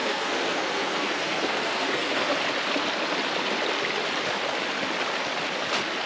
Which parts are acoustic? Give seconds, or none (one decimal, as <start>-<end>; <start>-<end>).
2.3-6.1